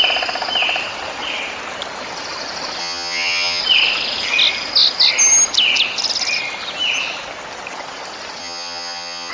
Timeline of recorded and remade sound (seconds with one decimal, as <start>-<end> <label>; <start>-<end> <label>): 0.0-2.8 recorded; 2.8-3.6 remade; 3.6-8.4 recorded; 8.4-9.3 remade